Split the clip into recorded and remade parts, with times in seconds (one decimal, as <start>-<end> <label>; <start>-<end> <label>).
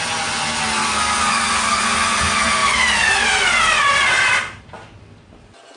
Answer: 0.0-0.8 recorded; 0.8-1.8 remade; 1.8-5.8 recorded